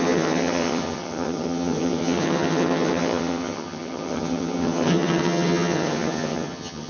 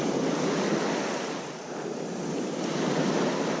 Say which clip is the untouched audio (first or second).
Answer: second